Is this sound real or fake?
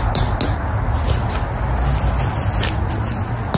real